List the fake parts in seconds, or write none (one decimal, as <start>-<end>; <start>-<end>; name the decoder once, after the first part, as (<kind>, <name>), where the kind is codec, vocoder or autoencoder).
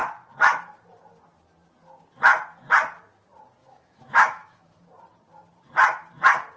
3.6-4.8 (autoencoder, DAC-VAE)